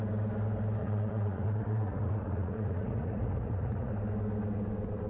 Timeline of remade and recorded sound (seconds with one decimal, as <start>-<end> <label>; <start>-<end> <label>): 0.0-0.8 recorded; 0.8-3.9 remade; 3.9-5.1 recorded